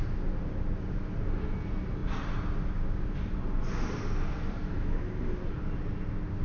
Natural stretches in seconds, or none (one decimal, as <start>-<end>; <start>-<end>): 0.0-4.6; 5.2-6.4